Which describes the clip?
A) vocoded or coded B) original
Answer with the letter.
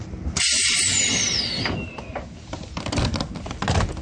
B